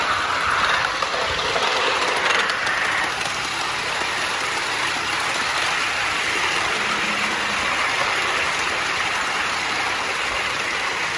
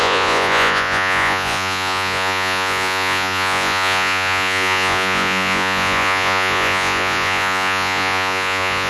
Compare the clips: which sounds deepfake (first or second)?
second